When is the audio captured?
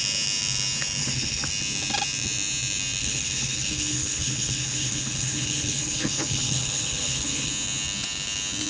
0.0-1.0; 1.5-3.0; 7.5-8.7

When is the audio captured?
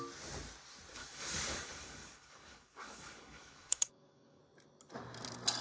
0.0-1.0; 4.4-5.6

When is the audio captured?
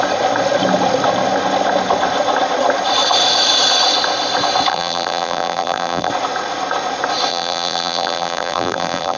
0.0-4.7; 6.1-7.3